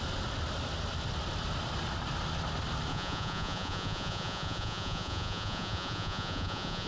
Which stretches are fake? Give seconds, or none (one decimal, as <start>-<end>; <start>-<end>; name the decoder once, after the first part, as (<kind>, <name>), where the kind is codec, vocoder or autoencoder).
2.9-6.9 (vocoder, Vocos)